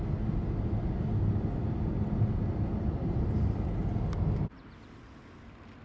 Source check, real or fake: real